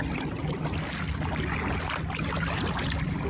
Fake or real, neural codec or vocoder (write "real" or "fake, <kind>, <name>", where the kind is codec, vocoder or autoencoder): real